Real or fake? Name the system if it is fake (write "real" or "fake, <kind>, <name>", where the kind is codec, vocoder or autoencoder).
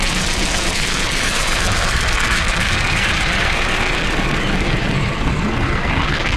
fake, codec, SNAC